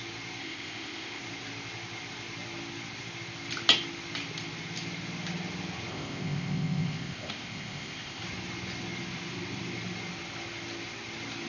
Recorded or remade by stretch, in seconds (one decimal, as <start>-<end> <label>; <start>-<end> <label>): 0.0-0.4 recorded; 0.4-1.2 remade; 1.2-5.9 recorded; 5.9-8.2 remade; 8.2-11.5 recorded